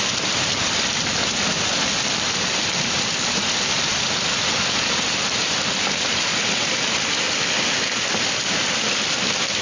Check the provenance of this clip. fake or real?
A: fake